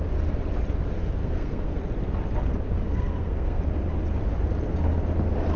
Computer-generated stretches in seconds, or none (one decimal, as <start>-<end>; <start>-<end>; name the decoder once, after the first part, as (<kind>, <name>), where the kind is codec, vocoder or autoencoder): 1.2-1.8 (codec, SNAC); 2.8-3.6